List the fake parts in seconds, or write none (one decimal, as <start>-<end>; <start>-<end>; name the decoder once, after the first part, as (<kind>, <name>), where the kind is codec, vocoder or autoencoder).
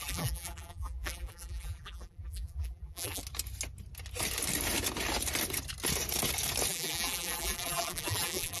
0.0-3.2 (vocoder, BigVGAN v2); 6.7-8.6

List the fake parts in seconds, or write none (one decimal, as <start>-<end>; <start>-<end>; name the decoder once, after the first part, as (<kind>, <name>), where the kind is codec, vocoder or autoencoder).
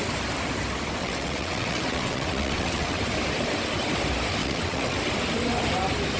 1.0-3.0 (vocoder, WaveNeXt); 4.4-5.0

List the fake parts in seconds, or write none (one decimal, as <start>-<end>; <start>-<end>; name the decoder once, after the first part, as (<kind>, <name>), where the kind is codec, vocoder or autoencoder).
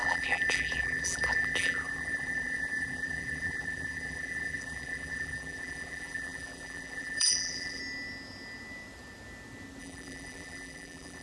0.0-7.8 (vocoder, BigVGAN v2); 9.8-11.2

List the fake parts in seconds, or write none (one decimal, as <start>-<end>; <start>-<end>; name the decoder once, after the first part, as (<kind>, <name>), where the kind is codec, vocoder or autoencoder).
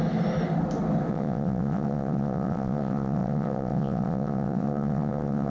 1.1-5.5 (vocoder, WaveNeXt)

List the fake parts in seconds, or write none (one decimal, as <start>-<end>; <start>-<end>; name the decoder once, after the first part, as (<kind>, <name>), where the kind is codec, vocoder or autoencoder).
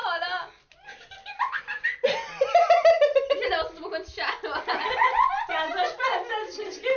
none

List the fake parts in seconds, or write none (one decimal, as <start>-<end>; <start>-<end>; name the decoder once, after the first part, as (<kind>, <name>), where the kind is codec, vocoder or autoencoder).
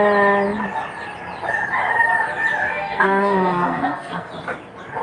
2.6-4.3 (codec, SNAC)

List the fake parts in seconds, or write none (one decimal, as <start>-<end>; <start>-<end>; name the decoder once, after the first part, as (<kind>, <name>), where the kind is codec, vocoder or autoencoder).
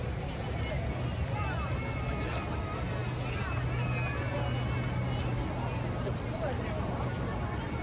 none